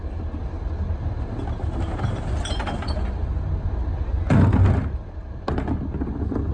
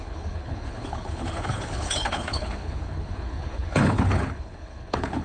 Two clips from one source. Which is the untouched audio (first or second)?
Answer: first